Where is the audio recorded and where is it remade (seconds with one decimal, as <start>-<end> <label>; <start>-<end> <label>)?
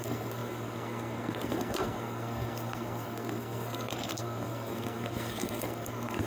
0.0-6.3 remade